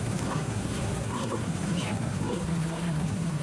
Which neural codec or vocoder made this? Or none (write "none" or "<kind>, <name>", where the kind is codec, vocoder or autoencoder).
codec, SNAC